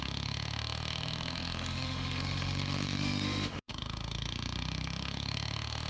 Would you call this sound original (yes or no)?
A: no